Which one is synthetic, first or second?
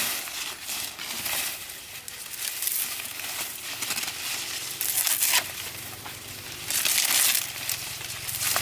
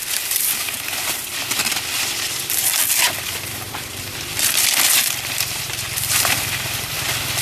second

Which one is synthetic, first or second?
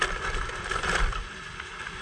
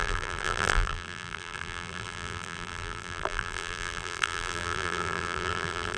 second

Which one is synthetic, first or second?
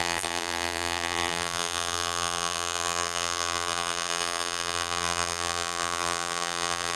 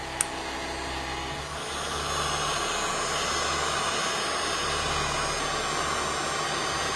first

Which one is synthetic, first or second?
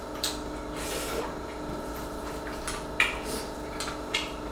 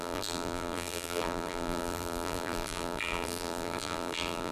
second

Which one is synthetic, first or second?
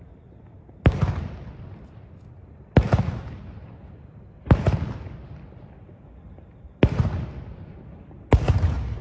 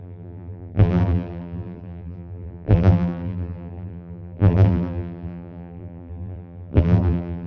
second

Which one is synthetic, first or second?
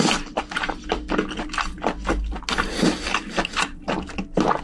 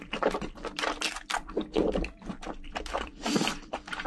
second